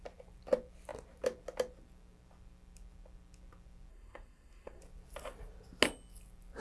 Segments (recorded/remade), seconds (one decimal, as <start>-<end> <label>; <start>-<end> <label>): 0.0-3.9 recorded; 3.9-4.8 remade; 4.8-6.6 recorded